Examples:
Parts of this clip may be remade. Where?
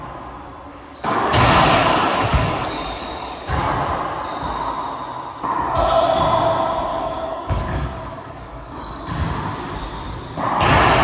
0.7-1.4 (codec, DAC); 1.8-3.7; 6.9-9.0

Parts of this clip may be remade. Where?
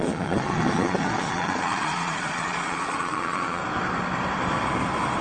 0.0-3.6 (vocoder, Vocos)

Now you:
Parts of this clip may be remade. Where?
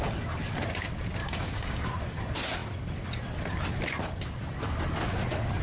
1.2-1.8 (codec, DAC)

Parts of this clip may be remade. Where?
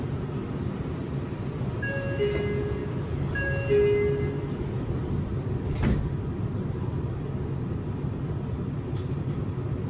none